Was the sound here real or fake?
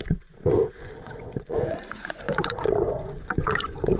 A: fake